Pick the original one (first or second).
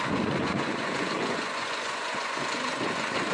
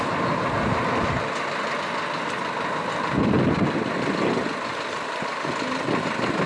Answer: second